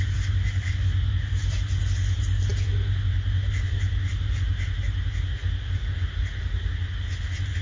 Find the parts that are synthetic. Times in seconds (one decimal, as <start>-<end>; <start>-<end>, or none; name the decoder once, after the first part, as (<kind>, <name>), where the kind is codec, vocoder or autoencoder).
none